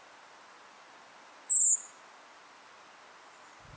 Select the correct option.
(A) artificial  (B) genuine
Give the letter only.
B